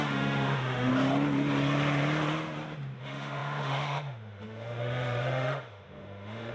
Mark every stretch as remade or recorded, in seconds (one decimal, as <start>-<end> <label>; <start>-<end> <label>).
0.0-0.9 remade; 0.9-3.0 recorded; 3.0-6.5 remade